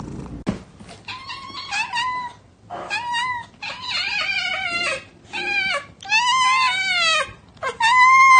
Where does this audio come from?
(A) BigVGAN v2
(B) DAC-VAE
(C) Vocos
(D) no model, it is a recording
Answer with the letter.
D